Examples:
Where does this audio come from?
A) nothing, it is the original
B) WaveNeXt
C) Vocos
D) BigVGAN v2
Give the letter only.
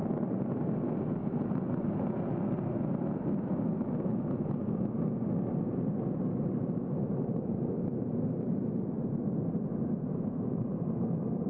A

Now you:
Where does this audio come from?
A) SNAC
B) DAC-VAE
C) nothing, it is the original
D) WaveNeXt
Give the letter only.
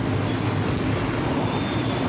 C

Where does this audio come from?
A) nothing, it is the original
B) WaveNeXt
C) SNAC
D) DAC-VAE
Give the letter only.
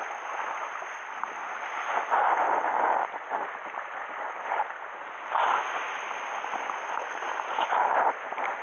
A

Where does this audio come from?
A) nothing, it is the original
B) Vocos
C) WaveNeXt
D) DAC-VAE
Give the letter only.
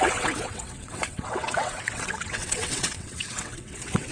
C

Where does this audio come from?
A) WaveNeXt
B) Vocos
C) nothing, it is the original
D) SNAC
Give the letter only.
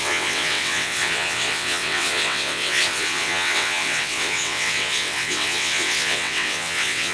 A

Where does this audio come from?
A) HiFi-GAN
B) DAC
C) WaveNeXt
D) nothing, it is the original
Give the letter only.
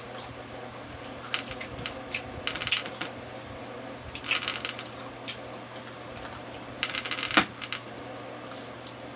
D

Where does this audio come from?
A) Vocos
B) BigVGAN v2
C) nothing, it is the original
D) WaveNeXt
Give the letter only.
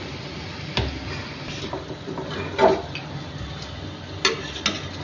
C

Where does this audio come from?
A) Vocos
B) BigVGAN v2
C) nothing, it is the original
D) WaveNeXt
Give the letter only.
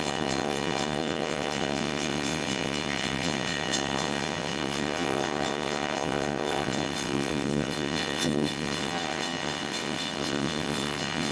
D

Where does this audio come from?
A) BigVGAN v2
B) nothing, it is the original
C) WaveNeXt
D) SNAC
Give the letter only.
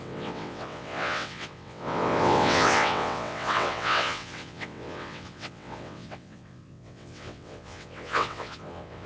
C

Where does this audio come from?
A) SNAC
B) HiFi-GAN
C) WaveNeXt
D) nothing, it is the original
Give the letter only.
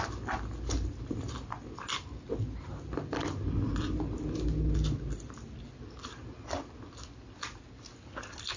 D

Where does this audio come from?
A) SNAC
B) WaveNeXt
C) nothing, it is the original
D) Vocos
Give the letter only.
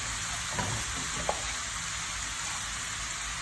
C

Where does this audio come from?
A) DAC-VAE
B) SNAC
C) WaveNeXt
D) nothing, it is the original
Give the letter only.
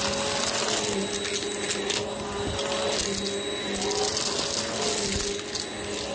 D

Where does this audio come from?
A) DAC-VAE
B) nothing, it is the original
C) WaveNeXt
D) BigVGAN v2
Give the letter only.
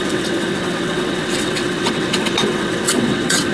C